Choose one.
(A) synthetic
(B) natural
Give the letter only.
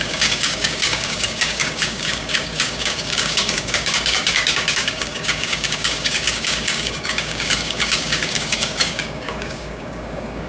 A